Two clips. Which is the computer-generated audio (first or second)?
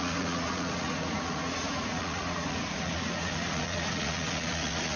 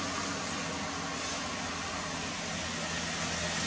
first